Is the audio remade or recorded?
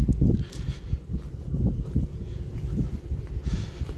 recorded